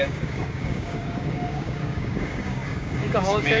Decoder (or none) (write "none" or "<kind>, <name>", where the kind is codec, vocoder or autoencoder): codec, DAC